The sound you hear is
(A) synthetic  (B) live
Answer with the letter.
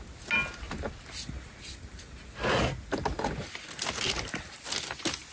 B